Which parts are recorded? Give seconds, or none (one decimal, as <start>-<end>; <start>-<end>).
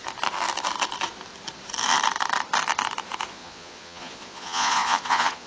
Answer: 0.0-3.3